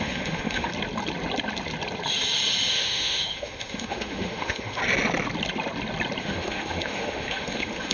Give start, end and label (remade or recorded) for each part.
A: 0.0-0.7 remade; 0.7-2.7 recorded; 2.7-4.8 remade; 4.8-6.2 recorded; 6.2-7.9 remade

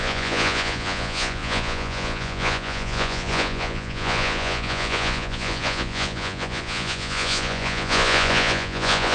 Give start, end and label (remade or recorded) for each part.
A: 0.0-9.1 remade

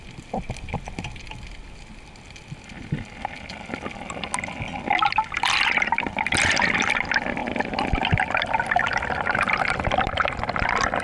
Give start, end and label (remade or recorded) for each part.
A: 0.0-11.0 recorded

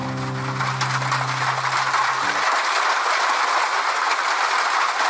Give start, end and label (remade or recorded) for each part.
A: 0.0-5.1 recorded

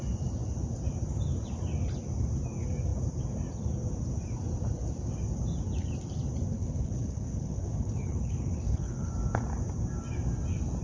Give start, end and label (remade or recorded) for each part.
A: 0.0-6.5 recorded; 6.5-9.1 remade; 9.1-10.8 recorded